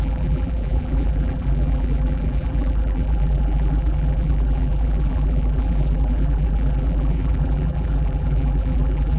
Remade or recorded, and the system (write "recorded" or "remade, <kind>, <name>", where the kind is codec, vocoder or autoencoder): remade, vocoder, BigVGAN v2